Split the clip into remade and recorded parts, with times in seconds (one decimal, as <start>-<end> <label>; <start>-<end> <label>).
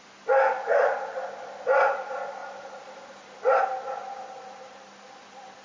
0.0-5.6 recorded